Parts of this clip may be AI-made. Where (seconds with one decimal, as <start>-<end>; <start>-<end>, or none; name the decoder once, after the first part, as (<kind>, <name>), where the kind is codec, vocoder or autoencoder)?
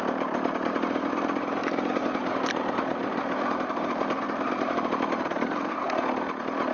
1.6-5.3 (vocoder, BigVGAN v2)